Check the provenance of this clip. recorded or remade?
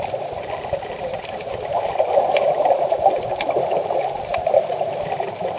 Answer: remade